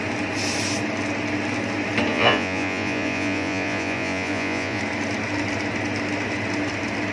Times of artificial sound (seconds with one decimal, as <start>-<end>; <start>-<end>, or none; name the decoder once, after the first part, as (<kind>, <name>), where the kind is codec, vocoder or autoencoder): 2.1-4.8 (vocoder, Vocos)